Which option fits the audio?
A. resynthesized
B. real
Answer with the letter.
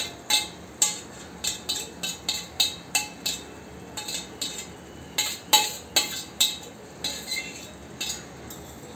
B